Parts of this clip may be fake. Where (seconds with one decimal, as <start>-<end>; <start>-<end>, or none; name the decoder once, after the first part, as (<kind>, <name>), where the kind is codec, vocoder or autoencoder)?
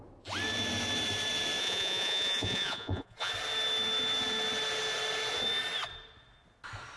1.6-3.3 (vocoder, Vocos)